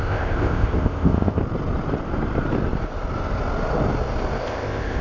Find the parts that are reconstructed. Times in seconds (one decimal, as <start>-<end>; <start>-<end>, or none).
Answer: 0.0-1.4; 4.4-5.0